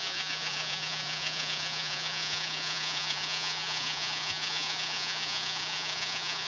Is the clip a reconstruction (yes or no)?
yes